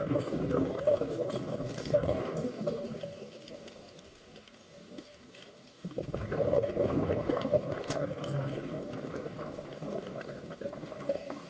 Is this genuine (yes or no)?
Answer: no